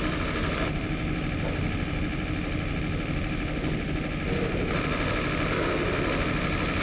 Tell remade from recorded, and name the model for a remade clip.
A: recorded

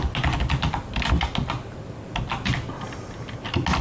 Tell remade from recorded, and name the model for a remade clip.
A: recorded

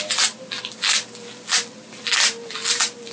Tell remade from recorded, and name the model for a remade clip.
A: recorded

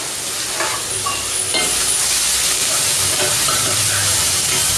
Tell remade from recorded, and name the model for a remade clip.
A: recorded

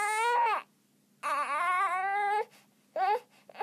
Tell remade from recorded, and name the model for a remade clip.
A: recorded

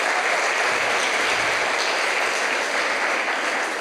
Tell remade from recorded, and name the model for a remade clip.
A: recorded